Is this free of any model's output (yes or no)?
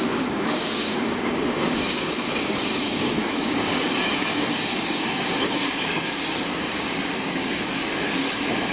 no